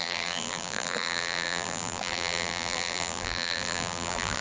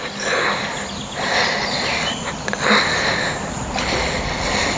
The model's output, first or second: first